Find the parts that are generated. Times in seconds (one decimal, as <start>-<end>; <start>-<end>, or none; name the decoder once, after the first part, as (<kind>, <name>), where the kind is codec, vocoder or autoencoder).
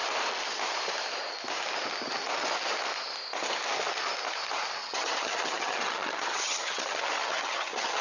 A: 4.8-8.0 (vocoder, HiFi-GAN)